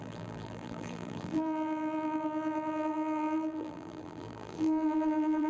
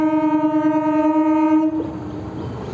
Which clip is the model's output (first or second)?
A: first